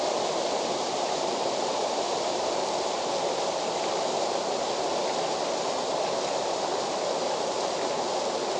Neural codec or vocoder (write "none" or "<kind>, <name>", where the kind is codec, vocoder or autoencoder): none